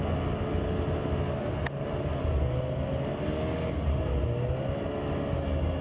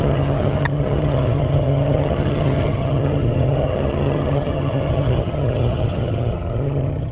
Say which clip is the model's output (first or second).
second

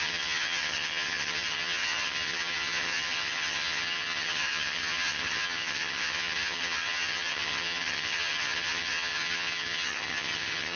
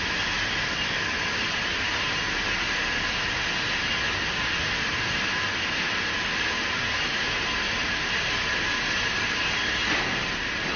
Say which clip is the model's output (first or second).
first